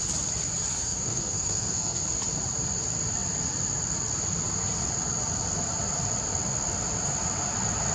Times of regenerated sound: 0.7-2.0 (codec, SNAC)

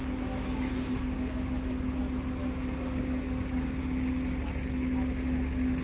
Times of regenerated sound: 0.0-2.0 (codec, DAC); 2.4-3.8

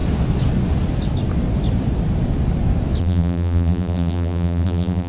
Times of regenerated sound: 3.0-5.1 (vocoder, BigVGAN v2)

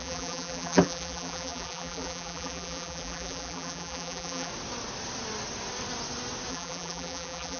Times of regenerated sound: 0.0-4.5 (vocoder, BigVGAN v2); 6.5-7.6

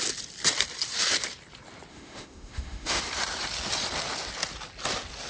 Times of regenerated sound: 1.9-3.0 (autoencoder, DAC-VAE)